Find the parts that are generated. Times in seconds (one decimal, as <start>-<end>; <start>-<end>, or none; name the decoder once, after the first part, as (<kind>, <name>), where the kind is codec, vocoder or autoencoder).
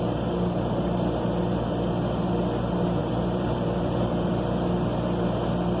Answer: 3.0-4.3 (vocoder, BigVGAN v2)